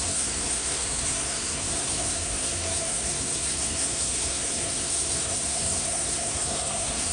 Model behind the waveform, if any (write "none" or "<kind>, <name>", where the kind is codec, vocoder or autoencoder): codec, SNAC